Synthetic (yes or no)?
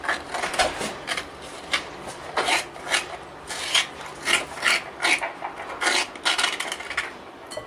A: no